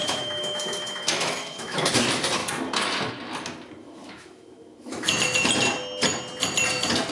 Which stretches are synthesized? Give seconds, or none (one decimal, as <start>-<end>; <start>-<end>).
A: 0.0-1.9; 3.8-5.1